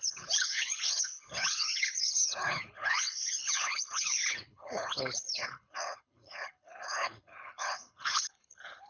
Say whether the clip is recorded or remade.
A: remade